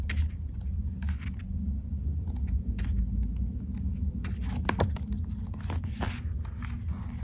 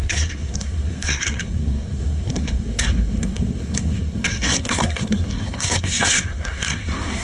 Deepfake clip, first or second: second